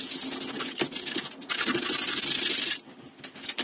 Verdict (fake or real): real